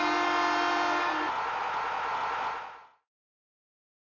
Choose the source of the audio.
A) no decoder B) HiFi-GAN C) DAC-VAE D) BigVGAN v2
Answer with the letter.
A